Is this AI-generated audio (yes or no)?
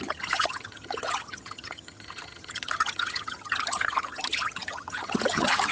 yes